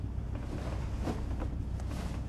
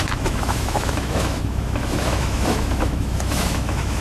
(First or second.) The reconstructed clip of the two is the second